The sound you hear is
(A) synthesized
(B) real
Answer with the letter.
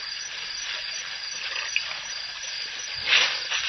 B